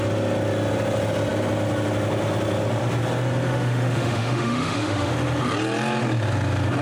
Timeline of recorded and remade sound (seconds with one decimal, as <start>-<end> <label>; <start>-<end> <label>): 0.0-3.5 recorded; 3.5-5.1 remade; 5.1-6.8 recorded